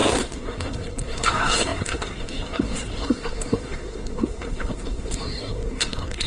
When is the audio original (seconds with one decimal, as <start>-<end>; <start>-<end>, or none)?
none